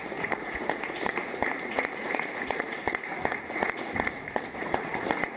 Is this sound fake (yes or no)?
yes